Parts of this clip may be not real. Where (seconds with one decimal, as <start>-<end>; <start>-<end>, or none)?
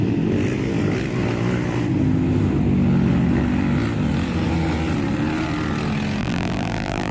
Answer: 6.2-7.1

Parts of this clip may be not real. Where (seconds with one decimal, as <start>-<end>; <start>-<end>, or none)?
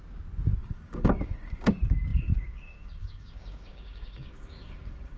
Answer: 0.6-1.7; 2.1-5.2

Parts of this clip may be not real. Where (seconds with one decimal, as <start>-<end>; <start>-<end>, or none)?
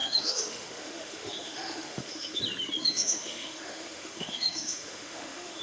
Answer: 0.0-2.4; 2.8-5.6